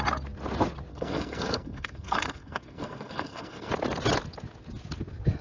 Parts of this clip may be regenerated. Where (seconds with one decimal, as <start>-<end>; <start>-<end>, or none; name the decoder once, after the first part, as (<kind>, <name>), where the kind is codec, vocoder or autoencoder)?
0.9-3.7 (codec, SNAC)